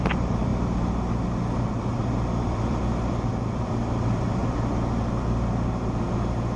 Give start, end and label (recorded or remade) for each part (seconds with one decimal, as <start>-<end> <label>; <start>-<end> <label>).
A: 0.0-0.5 remade; 0.5-2.0 recorded; 2.0-4.4 remade; 4.4-6.6 recorded